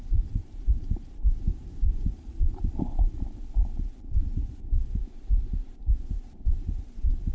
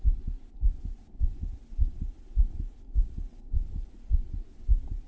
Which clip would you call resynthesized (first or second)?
first